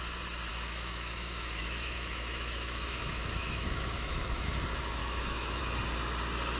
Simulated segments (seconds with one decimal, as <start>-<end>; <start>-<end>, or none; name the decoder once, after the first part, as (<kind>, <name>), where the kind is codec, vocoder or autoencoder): 0.5-4.5 (autoencoder, DAC-VAE); 5.0-5.6